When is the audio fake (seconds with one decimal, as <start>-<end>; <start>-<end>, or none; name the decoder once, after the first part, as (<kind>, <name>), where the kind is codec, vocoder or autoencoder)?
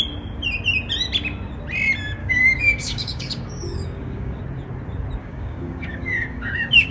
2.2-4.4 (codec, DAC); 5.2-6.9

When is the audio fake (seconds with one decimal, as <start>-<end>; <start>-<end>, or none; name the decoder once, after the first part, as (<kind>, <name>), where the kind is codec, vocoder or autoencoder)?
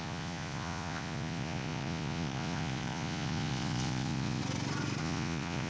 0.0-4.4 (vocoder, Vocos); 5.0-5.7